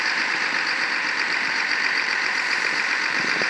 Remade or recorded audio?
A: remade